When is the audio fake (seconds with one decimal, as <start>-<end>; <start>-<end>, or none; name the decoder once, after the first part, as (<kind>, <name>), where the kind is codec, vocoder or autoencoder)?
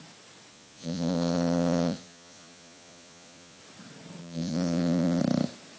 0.5-3.6 (vocoder, Vocos); 4.2-5.2